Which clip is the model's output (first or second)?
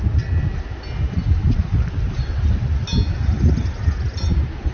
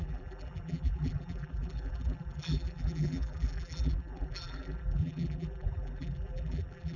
second